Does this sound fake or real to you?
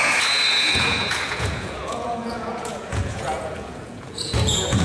fake